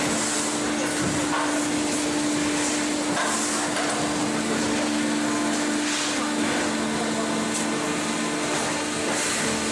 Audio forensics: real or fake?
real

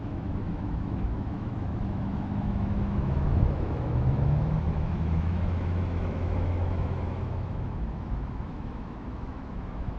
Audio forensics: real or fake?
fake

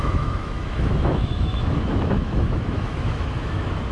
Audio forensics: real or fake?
fake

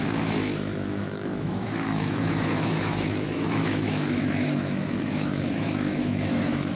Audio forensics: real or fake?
fake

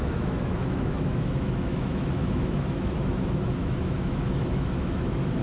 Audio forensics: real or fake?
fake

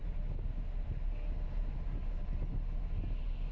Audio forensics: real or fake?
real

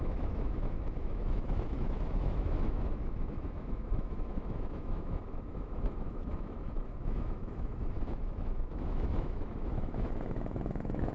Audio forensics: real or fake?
fake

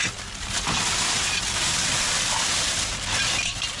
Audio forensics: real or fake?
real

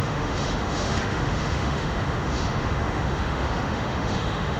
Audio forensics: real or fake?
fake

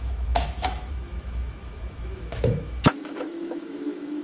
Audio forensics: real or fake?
fake